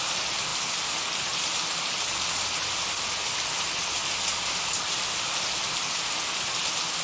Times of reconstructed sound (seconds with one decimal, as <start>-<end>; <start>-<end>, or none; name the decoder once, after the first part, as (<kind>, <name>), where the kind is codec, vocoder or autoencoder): 0.0-7.0 (vocoder, BigVGAN v2)

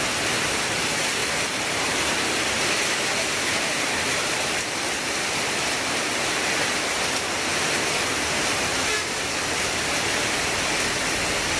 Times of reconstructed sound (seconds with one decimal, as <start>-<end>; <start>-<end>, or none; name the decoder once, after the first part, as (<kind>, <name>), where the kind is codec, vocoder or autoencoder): 1.2-2.6 (vocoder, BigVGAN v2); 4.1-6.7; 7.5-10.5

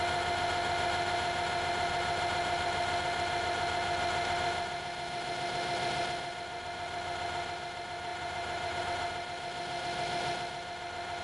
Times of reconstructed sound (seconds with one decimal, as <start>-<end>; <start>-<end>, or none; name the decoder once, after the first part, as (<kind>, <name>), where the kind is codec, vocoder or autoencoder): 8.1-8.8 (vocoder, BigVGAN v2)

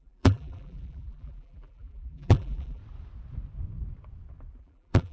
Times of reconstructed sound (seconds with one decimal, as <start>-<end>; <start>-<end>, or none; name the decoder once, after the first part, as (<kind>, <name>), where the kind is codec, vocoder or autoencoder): 0.0-2.8 (vocoder, BigVGAN v2); 4.6-5.1

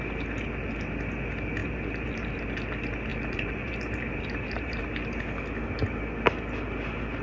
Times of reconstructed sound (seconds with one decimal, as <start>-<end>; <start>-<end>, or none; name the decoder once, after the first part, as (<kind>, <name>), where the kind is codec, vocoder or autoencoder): 1.6-2.4 (vocoder, BigVGAN v2); 3.1-4.8